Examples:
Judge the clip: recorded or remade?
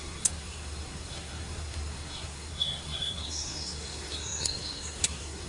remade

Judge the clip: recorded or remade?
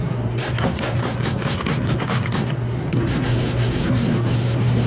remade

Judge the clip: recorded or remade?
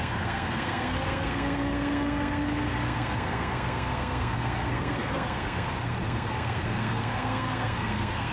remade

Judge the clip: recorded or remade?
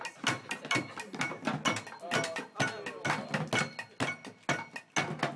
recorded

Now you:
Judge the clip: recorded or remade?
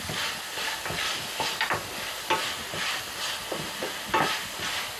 recorded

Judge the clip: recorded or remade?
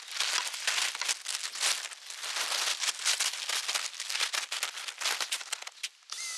recorded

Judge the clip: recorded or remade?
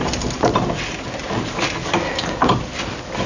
recorded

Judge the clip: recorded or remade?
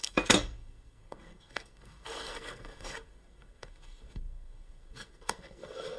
remade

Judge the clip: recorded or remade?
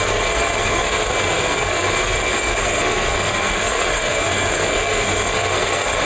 remade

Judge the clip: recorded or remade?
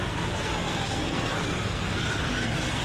remade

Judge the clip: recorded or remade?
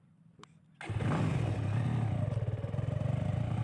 recorded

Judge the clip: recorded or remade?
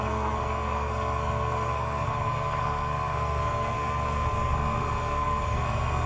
remade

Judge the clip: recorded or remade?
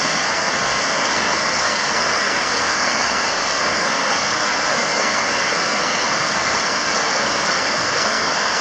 remade